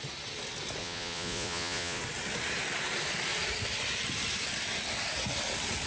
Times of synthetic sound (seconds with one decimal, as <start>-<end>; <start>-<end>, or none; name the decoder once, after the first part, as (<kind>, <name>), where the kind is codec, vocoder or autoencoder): 0.8-2.0 (vocoder, Vocos)